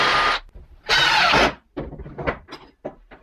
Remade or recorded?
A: recorded